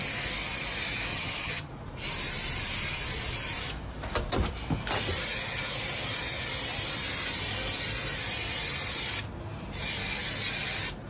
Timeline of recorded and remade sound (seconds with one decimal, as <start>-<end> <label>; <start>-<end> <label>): 0.0-1.1 recorded; 1.1-1.7 remade; 1.7-11.1 recorded